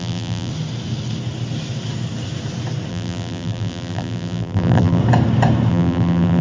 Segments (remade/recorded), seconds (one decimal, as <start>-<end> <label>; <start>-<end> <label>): 0.0-0.5 remade; 0.5-2.9 recorded; 2.9-5.0 remade; 5.0-5.7 recorded; 5.7-6.4 remade